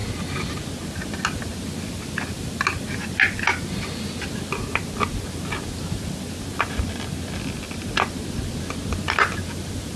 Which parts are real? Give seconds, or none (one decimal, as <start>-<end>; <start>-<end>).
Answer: 0.0-10.0